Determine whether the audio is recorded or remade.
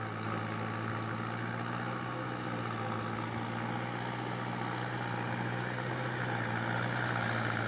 recorded